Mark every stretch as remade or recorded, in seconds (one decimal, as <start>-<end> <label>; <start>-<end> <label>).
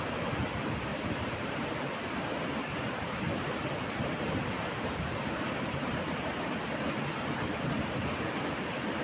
0.0-0.9 recorded; 0.9-1.8 remade; 1.8-2.6 recorded; 2.6-6.4 remade; 6.4-9.0 recorded